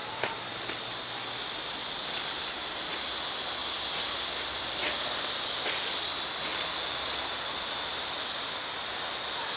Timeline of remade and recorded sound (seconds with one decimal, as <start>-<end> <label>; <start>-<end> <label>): 0.0-0.8 remade; 0.8-9.6 recorded

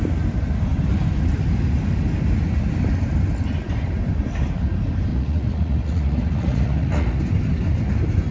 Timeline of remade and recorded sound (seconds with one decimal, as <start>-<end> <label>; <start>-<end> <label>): 0.0-5.1 recorded; 5.1-7.2 remade; 7.2-8.3 recorded